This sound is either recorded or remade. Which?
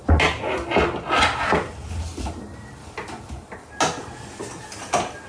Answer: recorded